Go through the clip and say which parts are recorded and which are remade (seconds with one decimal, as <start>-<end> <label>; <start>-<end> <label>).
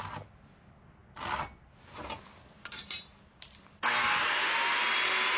0.0-5.4 recorded